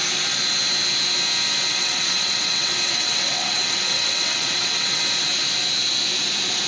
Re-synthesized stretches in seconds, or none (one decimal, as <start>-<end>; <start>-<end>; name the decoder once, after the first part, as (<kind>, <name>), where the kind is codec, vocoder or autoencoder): 1.7-5.0 (vocoder, WaveNeXt)